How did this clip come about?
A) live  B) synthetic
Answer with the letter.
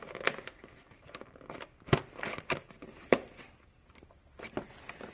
A